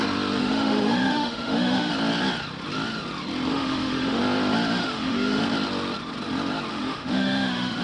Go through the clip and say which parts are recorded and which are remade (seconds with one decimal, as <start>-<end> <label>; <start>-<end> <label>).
0.0-0.4 recorded; 0.4-1.9 remade; 1.9-3.5 recorded; 3.5-4.2 remade; 4.2-4.8 recorded; 4.8-5.4 remade; 5.4-6.7 recorded; 6.7-7.8 remade